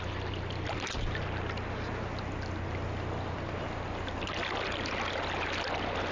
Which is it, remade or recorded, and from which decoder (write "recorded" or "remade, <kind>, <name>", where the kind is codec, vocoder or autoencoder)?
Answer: recorded